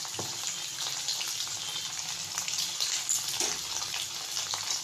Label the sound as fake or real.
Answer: real